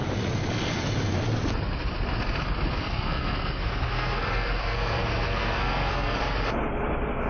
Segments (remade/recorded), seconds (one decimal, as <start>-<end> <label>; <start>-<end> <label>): 0.0-2.8 recorded; 2.8-6.2 remade; 6.2-7.3 recorded